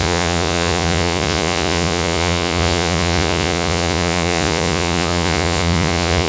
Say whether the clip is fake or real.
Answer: fake